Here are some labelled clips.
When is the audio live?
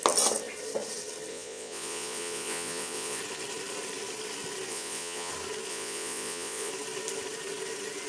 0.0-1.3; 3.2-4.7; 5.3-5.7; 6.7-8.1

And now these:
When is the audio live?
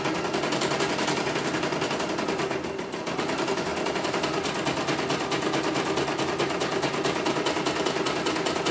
0.0-8.7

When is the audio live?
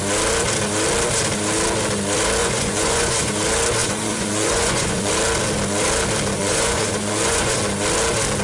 0.0-2.4; 3.3-3.8; 5.1-6.4; 7.6-8.4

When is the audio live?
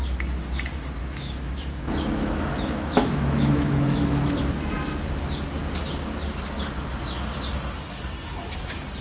0.0-1.0; 4.4-9.0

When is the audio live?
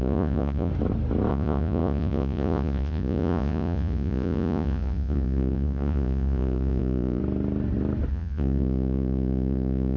0.7-1.3; 7.2-8.1